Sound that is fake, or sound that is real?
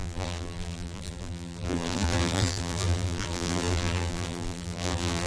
fake